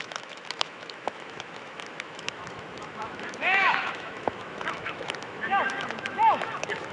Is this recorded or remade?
remade